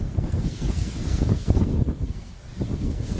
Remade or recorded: remade